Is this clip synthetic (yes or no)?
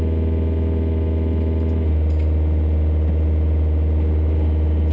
no